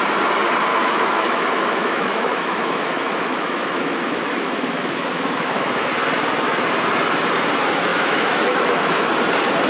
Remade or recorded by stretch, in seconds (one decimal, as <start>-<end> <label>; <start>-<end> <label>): 0.0-0.7 recorded; 0.7-5.9 remade; 5.9-7.9 recorded; 7.9-9.1 remade; 9.1-9.7 recorded

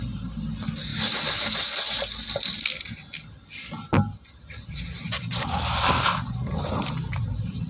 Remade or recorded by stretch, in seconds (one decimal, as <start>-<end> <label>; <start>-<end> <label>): 0.0-7.7 recorded

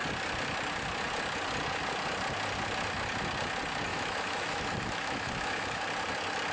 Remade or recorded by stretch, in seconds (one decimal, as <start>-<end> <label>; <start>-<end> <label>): 0.0-3.9 recorded; 3.9-5.8 remade; 5.8-6.5 recorded

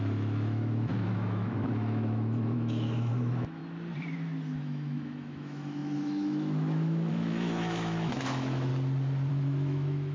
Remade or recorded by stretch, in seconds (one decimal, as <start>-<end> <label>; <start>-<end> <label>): 0.0-3.6 remade; 3.6-4.6 recorded; 4.6-8.7 remade; 8.7-9.3 recorded; 9.3-10.1 remade

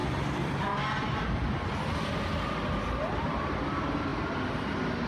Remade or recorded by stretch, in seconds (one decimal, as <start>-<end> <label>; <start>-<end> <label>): 0.0-5.1 recorded

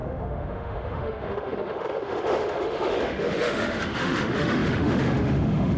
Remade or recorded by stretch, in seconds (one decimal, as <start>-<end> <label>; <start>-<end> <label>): 0.0-5.8 remade

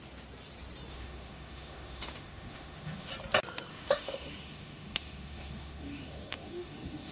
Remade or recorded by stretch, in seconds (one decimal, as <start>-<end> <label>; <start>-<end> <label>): 0.0-0.9 recorded; 0.9-3.1 remade; 3.1-3.7 recorded; 3.7-7.1 remade